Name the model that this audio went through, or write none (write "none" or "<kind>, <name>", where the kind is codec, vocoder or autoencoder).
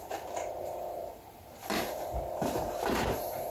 vocoder, BigVGAN v2